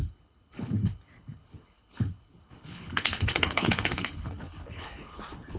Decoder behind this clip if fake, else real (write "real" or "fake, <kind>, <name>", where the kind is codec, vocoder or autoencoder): fake, codec, HILCodec